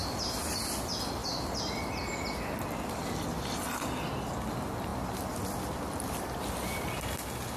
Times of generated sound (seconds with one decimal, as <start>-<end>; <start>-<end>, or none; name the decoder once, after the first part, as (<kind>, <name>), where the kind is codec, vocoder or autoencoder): 4.9-6.9 (vocoder, BigVGAN v2)